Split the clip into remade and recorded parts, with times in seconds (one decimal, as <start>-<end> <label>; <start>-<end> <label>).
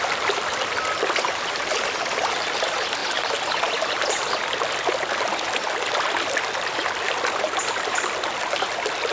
0.0-9.1 recorded